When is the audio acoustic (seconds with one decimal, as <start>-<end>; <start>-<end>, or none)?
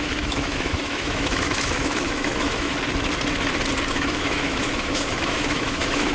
2.7-3.9